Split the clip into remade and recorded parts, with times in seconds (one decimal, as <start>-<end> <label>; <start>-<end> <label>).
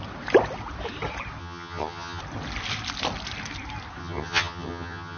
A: 0.0-1.4 recorded; 1.4-2.2 remade; 2.2-4.0 recorded; 4.0-5.2 remade